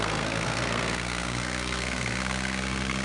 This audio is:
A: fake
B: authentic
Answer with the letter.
A